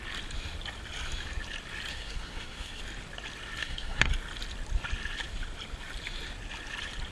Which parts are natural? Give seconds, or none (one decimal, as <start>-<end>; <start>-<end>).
0.0-1.9; 2.8-3.6; 4.1-7.1